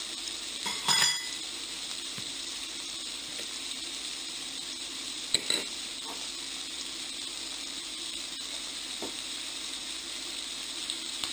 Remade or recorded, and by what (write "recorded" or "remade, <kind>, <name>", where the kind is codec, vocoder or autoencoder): remade, vocoder, BigVGAN v2